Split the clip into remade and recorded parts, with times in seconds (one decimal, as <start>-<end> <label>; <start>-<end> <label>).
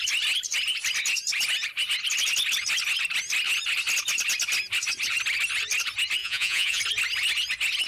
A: 0.0-6.2 recorded; 6.2-6.8 remade; 6.8-7.9 recorded